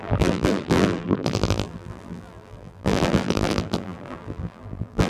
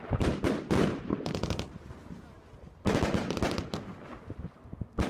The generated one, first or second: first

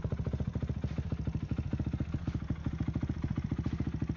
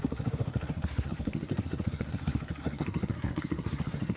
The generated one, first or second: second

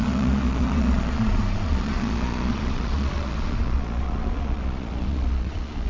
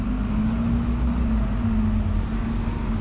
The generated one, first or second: first